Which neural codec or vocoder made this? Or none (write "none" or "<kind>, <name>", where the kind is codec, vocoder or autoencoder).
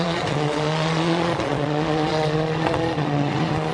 vocoder, Vocos